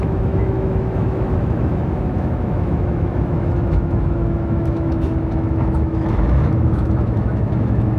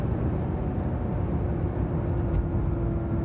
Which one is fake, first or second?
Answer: first